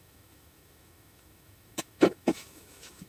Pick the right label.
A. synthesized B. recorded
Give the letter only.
A